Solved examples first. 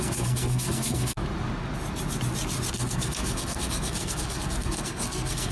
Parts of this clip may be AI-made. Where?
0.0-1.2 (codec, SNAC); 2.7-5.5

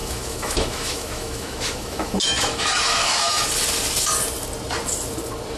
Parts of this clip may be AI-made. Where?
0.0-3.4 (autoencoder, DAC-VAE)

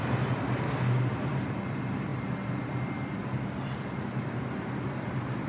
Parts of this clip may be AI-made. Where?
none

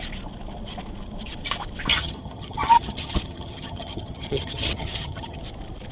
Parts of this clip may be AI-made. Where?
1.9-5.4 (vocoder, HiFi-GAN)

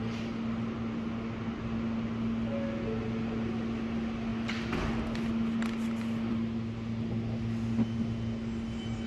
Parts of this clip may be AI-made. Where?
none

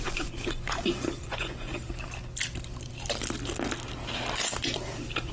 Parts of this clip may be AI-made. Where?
0.0-1.7 (vocoder, Vocos)

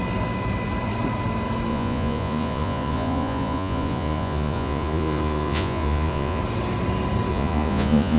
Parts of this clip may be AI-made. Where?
1.7-6.4 (vocoder, Vocos); 7.3-8.2

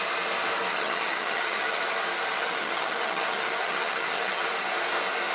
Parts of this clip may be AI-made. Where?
0.7-1.8 (vocoder, HiFi-GAN); 2.3-4.4